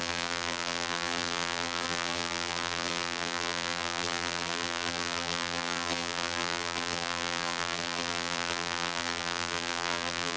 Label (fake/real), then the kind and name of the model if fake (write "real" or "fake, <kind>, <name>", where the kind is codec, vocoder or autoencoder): fake, vocoder, BigVGAN v2